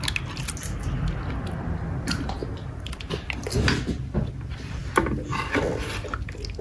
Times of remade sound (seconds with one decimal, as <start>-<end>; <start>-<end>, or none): 2.4-3.0